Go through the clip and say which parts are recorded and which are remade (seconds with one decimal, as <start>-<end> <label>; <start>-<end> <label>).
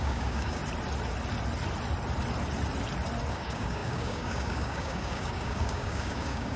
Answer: 0.0-0.6 remade; 0.6-3.3 recorded; 3.3-6.6 remade